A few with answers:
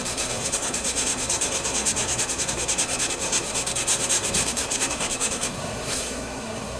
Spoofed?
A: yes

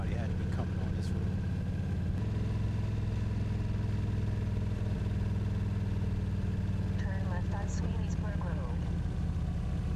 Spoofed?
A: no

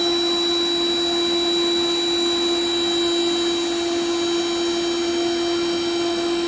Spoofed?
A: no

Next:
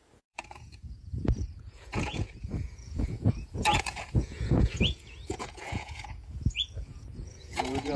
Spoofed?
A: yes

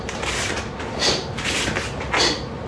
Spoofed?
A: no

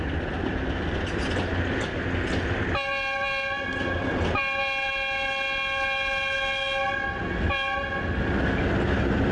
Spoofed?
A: no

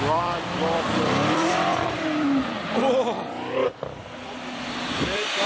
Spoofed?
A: yes